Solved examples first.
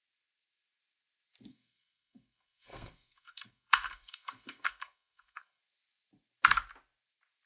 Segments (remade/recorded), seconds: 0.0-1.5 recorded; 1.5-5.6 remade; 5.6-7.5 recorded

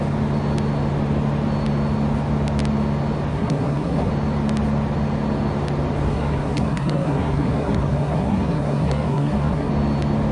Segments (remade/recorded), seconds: 0.0-3.3 recorded; 3.3-4.1 remade; 4.1-6.1 recorded; 6.1-9.7 remade; 9.7-10.3 recorded

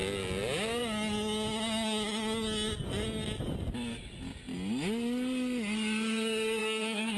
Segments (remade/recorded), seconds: 0.0-6.6 recorded; 6.6-7.2 remade

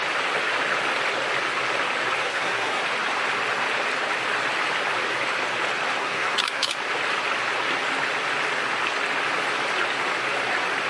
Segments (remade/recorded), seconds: 0.0-2.2 recorded; 2.2-2.8 remade; 2.8-6.0 recorded; 6.0-6.7 remade; 6.7-10.9 recorded